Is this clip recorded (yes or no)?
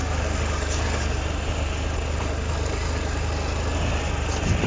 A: yes